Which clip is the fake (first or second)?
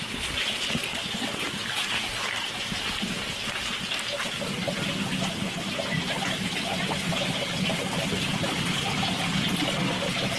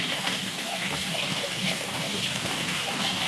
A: second